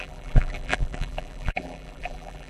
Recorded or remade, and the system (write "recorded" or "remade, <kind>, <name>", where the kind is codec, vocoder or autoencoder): remade, vocoder, BigVGAN v2